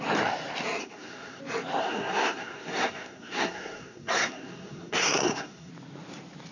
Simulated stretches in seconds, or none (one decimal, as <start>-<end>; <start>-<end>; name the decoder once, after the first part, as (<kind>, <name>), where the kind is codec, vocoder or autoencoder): 0.8-1.4 (codec, SNAC); 1.8-5.7